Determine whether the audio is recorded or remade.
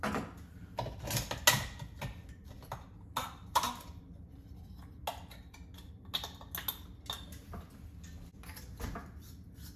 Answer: recorded